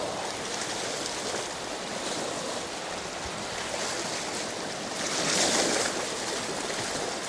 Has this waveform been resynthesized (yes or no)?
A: no